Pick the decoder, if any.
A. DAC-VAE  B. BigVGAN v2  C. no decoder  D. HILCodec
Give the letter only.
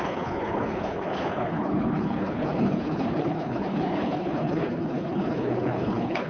D